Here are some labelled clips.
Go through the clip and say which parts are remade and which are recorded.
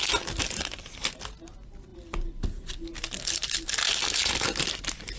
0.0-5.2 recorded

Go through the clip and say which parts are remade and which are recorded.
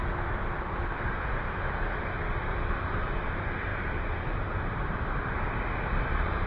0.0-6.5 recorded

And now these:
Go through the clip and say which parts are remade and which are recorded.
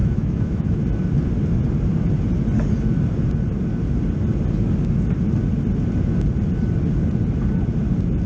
0.0-0.8 remade; 0.8-8.3 recorded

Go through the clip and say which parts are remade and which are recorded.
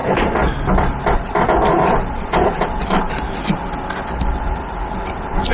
0.0-3.1 remade; 3.1-5.5 recorded